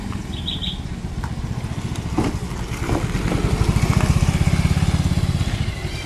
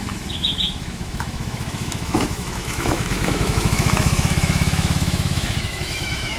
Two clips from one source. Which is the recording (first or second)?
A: first